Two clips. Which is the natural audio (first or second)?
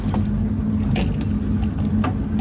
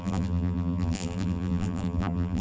first